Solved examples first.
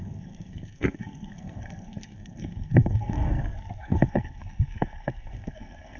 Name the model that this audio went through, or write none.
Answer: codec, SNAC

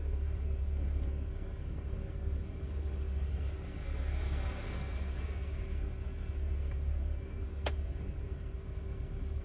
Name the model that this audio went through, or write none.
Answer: codec, SNAC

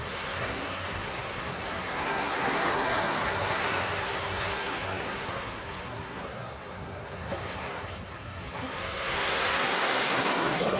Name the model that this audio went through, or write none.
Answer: codec, SNAC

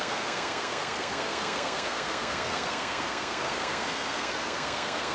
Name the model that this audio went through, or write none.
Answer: codec, SNAC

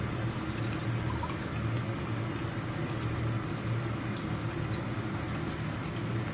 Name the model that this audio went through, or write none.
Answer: none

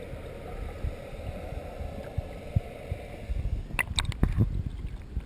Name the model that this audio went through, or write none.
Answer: none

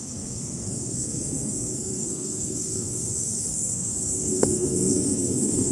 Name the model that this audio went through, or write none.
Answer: codec, SNAC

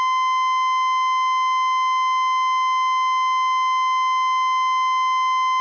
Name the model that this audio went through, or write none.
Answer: none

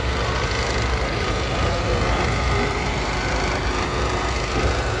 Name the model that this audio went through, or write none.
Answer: none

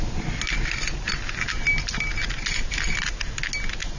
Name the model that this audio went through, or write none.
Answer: none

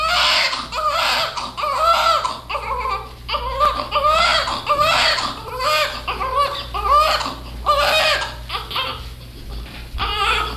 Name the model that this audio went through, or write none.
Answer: none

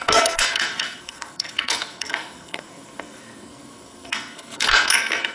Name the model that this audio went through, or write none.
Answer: codec, SNAC